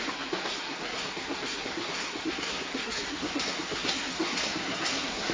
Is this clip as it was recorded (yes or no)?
no